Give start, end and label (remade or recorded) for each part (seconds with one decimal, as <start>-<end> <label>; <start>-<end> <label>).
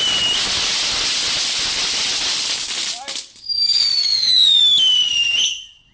0.0-4.1 recorded; 4.1-4.6 remade; 4.6-5.9 recorded